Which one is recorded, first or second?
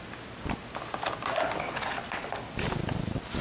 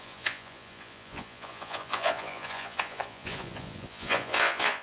first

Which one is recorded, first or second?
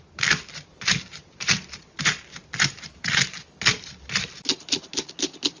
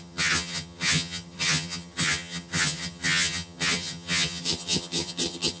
first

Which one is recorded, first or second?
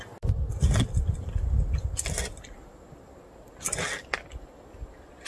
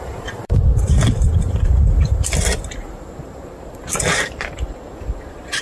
first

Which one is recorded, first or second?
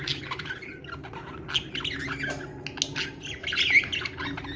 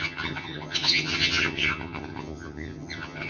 first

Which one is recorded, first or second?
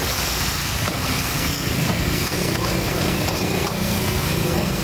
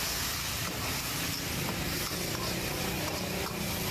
second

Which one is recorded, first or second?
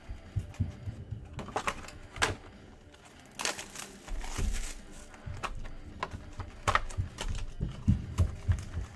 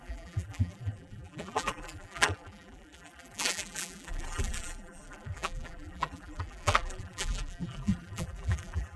first